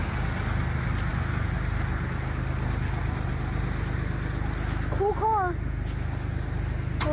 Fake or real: real